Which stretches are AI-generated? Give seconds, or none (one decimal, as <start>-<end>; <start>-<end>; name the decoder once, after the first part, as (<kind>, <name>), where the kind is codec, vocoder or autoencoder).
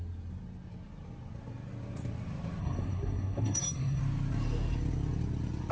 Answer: 2.6-4.0 (codec, SNAC)